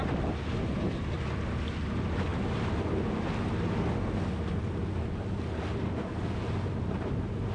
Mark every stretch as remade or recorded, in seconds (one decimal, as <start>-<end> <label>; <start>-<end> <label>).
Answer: 0.0-7.5 recorded